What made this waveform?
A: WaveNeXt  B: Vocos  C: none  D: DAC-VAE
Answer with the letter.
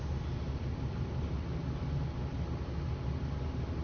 C